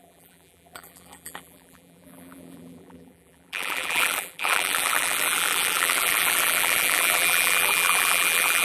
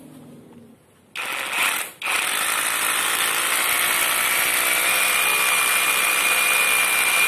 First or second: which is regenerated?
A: first